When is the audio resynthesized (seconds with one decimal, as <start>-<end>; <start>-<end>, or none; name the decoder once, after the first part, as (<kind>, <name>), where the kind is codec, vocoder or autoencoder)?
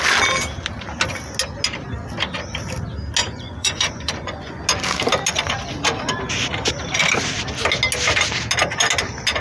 3.2-4.6 (vocoder, Vocos)